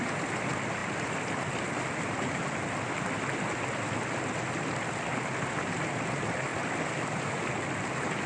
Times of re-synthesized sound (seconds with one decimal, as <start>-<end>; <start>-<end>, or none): none